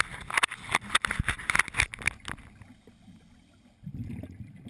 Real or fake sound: real